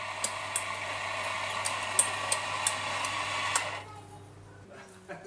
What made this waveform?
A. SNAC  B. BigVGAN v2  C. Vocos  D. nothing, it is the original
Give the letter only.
D